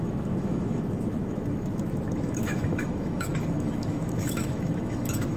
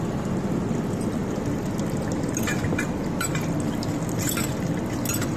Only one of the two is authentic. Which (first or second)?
second